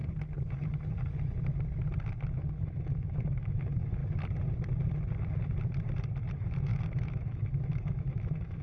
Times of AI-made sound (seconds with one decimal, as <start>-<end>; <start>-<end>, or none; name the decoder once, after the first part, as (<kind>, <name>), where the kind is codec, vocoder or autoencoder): 2.6-4.0 (autoencoder, DAC-VAE); 6.3-8.6